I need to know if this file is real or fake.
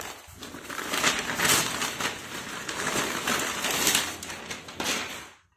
real